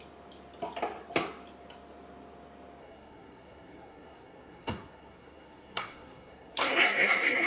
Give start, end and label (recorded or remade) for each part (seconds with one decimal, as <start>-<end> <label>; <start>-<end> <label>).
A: 0.0-2.8 recorded; 2.8-7.5 remade